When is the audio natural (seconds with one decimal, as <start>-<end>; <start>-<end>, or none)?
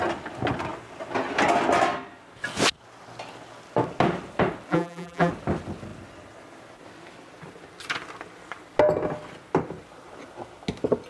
0.0-4.7; 5.3-11.1